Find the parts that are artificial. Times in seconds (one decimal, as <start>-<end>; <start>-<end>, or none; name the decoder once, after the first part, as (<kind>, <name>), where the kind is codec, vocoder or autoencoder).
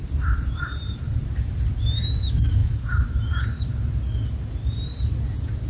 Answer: 0.0-2.0 (vocoder, BigVGAN v2); 2.6-3.2